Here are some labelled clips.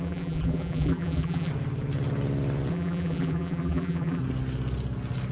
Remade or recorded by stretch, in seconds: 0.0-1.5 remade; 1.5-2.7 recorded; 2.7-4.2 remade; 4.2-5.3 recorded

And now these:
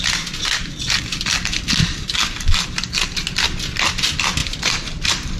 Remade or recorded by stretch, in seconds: 0.0-1.8 recorded; 1.8-2.5 remade; 2.5-4.4 recorded; 4.4-5.4 remade

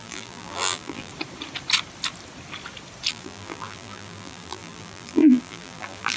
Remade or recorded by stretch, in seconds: 0.0-1.1 remade; 1.1-3.1 recorded; 3.1-6.2 remade